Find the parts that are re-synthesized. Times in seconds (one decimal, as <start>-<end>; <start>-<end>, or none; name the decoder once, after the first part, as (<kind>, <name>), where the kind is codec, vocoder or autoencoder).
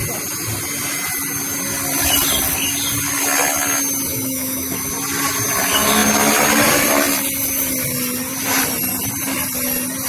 4.1-4.9 (autoencoder, DAC-VAE)